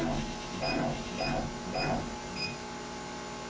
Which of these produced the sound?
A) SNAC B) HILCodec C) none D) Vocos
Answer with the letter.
C